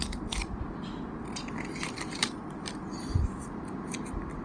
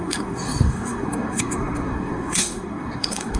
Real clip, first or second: first